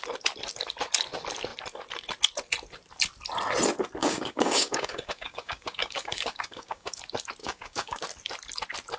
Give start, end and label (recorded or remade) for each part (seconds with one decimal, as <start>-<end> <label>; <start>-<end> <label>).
0.0-4.0 recorded; 4.0-7.0 remade; 7.0-7.4 recorded; 7.4-8.0 remade; 8.0-9.0 recorded